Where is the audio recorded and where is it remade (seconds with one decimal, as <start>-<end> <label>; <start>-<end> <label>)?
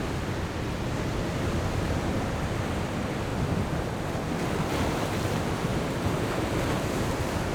0.0-3.3 remade; 3.3-3.9 recorded; 3.9-5.7 remade; 5.7-6.7 recorded; 6.7-7.5 remade